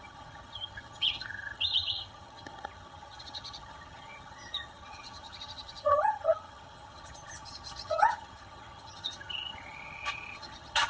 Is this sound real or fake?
fake